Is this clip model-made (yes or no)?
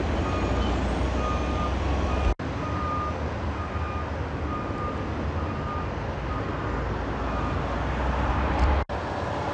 no